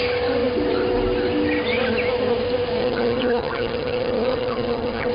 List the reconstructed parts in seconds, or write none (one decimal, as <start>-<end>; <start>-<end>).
2.8-5.1